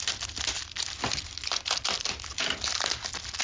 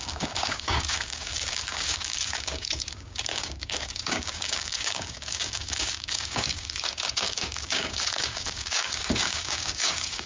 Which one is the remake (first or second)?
second